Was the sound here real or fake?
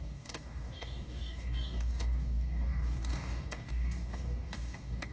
fake